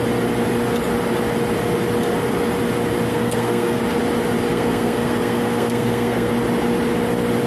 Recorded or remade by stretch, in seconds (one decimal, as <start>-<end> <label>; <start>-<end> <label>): 0.0-3.1 recorded; 3.1-3.8 remade; 3.8-4.5 recorded; 4.5-6.3 remade; 6.3-7.5 recorded

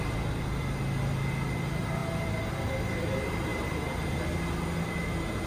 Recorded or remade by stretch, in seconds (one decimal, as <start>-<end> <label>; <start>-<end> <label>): 0.0-5.5 recorded